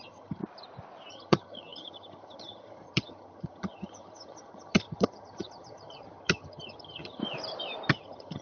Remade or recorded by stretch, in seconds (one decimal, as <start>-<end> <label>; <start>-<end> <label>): 0.0-0.4 remade; 0.4-1.1 recorded; 1.1-7.2 remade; 7.2-7.9 recorded; 7.9-8.4 remade